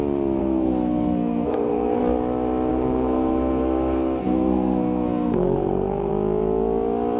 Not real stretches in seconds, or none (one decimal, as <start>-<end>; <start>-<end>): 0.4-2.0; 2.7-6.1